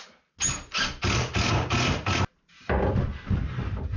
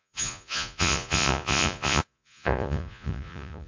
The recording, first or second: first